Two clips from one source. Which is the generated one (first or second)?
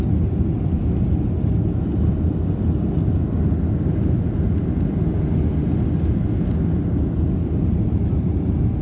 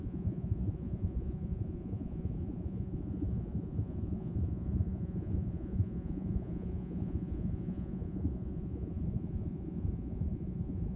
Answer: second